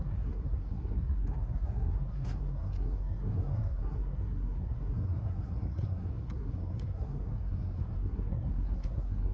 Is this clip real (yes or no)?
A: no